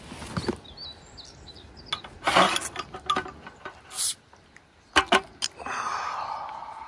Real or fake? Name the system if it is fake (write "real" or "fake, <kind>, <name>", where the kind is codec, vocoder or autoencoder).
real